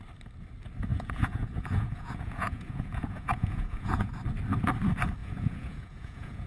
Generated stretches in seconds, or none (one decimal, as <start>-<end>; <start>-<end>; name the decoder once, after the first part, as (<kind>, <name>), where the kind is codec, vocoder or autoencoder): 0.9-4.1 (vocoder, Vocos); 5.2-6.5